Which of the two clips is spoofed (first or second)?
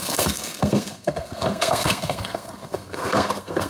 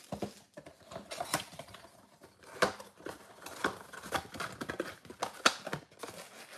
first